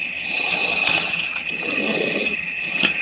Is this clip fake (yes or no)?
yes